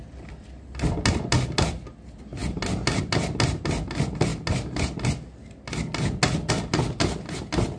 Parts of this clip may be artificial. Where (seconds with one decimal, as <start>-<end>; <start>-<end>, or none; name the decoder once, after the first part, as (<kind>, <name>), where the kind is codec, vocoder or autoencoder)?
none